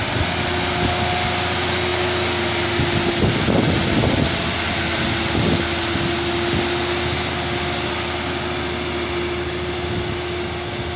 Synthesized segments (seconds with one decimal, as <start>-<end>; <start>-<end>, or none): none